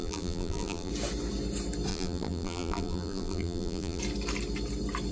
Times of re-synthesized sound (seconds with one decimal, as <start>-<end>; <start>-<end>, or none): 0.0-0.9; 1.9-4.0